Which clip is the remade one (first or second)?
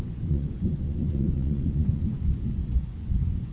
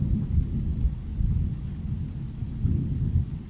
first